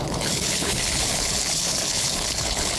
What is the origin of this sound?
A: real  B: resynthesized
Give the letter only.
B